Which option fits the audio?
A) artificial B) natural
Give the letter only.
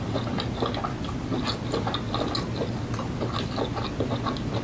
B